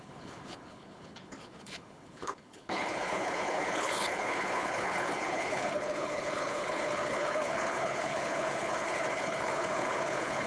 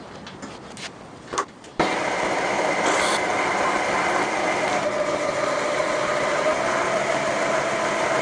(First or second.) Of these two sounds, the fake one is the first